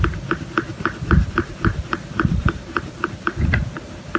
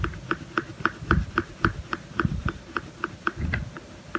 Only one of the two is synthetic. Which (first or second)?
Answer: first